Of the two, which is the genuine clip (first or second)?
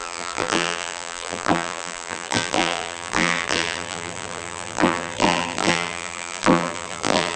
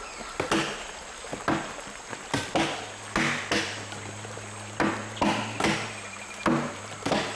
second